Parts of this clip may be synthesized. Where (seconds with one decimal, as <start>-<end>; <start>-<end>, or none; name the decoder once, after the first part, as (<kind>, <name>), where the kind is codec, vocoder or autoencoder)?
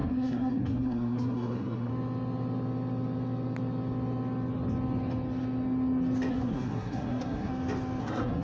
0.0-1.9 (codec, SNAC); 6.3-7.5; 8.0-8.4